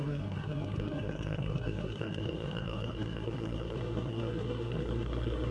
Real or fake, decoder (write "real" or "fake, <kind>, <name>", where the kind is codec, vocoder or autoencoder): fake, codec, SNAC